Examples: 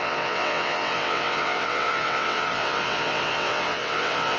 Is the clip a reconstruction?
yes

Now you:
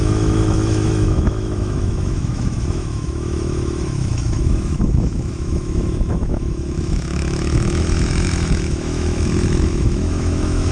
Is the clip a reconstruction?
yes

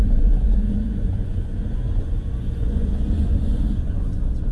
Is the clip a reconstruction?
yes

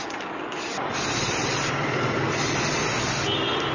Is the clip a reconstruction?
no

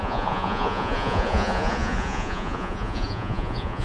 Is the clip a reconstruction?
yes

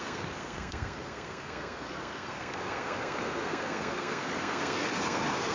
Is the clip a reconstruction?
yes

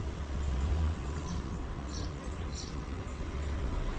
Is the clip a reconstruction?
yes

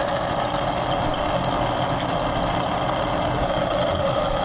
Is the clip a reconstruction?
no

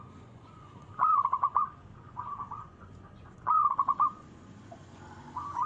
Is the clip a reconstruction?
yes